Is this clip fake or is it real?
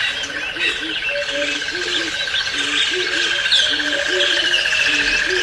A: real